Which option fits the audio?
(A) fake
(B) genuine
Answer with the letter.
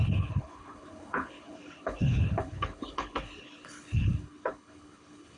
A